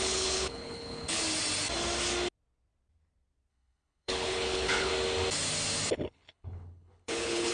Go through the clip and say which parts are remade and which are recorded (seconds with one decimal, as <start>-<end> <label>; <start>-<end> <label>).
0.0-1.2 remade; 1.2-3.5 recorded; 3.5-4.9 remade; 4.9-5.9 recorded; 5.9-7.5 remade